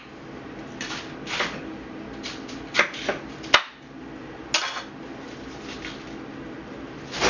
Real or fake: real